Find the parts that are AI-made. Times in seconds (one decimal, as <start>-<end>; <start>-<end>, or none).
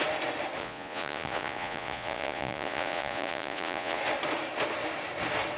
0.6-4.0